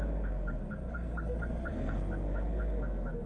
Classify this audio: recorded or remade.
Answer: remade